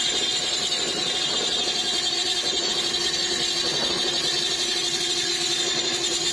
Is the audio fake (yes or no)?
yes